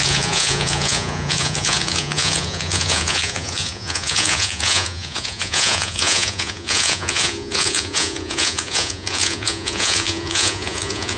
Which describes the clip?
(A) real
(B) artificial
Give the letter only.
B